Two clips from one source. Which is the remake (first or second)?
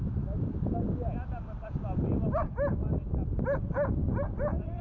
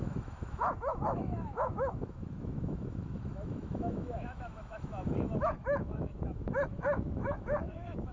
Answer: second